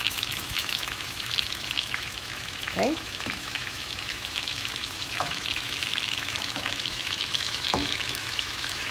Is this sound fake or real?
fake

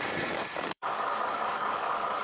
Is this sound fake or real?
fake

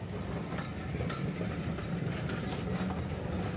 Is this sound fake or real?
real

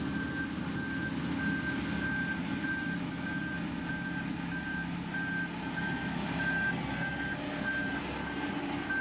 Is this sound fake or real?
real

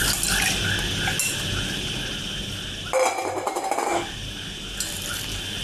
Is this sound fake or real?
real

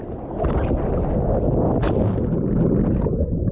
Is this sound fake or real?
real